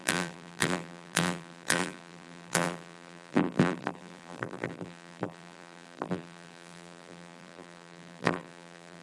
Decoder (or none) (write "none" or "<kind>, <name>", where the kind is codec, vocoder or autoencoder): vocoder, BigVGAN v2